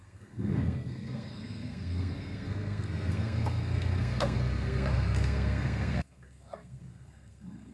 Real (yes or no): no